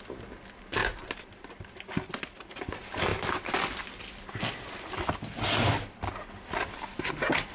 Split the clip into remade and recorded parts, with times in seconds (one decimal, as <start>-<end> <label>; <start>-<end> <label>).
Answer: 0.0-7.5 recorded